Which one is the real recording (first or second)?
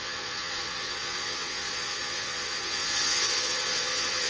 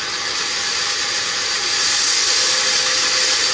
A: second